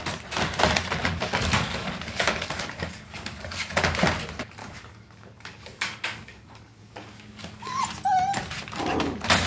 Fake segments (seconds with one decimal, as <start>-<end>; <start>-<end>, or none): 1.0-3.7; 4.6-7.8